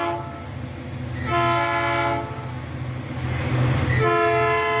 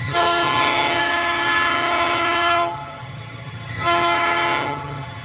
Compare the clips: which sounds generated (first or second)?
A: second